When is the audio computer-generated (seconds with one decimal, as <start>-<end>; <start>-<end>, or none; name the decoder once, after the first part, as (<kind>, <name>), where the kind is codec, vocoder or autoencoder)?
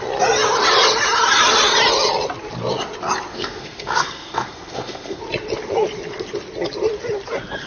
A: 3.3-5.2 (codec, SNAC)